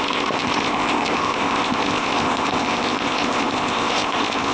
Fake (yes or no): yes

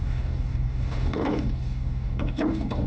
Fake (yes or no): yes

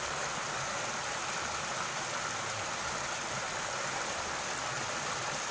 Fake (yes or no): no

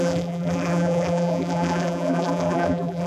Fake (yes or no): yes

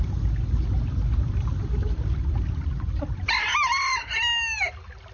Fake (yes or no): no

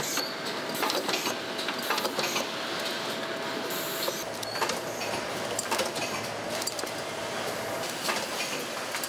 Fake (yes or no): no